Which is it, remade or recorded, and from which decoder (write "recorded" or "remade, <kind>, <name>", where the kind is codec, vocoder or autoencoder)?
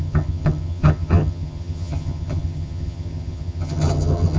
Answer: remade, vocoder, HiFi-GAN